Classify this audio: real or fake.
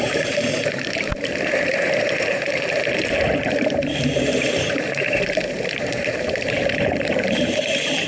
fake